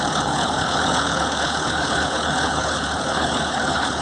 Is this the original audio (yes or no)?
no